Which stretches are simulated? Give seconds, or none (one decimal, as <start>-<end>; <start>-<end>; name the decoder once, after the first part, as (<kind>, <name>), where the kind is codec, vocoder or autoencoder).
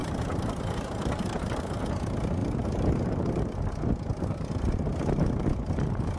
0.0-1.8 (vocoder, BigVGAN v2); 2.4-3.4